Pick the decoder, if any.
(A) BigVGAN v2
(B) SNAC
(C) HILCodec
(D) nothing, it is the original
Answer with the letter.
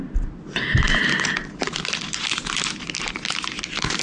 D